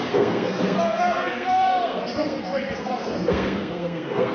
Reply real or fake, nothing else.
fake